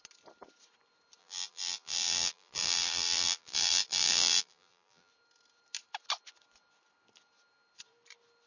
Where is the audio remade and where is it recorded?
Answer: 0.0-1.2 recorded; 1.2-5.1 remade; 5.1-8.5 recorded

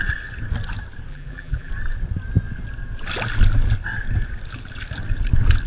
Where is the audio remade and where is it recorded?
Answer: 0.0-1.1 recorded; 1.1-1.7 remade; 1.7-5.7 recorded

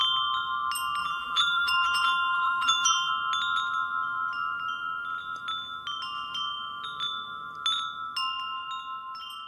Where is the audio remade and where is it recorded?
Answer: 0.0-1.0 recorded; 1.0-3.1 remade; 3.1-9.5 recorded